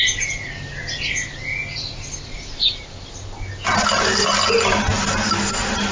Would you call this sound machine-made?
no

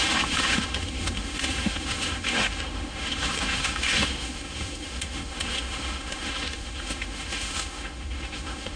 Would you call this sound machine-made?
yes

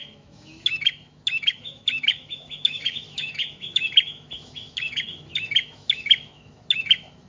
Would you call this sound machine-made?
yes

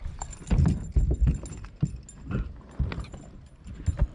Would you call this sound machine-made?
no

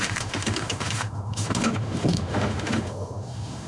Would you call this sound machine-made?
yes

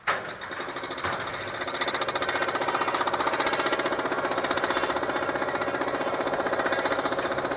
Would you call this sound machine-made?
no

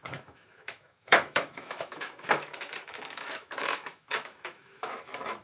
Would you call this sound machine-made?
yes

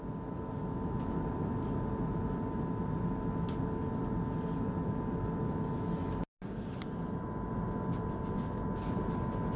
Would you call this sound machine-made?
no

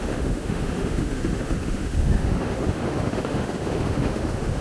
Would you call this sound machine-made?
yes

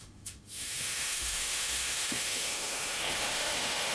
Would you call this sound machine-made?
yes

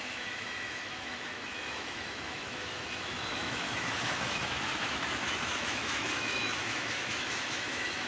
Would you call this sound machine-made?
yes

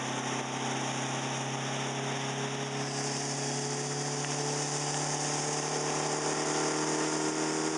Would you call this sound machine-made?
no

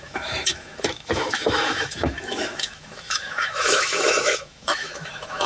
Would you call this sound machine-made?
yes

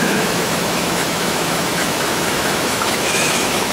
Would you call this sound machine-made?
yes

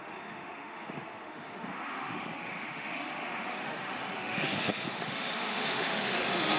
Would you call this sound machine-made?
yes